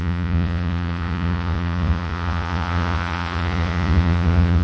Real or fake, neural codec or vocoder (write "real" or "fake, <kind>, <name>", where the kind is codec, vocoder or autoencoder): fake, vocoder, Vocos